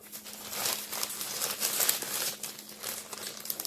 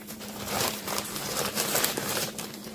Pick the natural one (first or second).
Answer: first